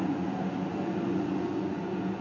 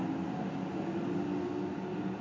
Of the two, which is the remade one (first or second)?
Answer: first